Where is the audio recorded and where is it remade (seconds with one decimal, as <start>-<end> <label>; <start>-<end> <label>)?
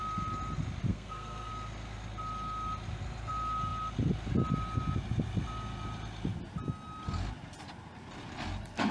0.0-0.9 recorded; 0.9-1.5 remade; 1.5-8.9 recorded